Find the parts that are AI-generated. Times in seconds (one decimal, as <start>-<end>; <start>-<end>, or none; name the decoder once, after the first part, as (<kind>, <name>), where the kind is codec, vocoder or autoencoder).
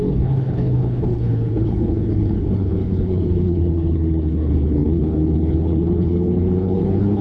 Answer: 0.0-7.2 (codec, HILCodec)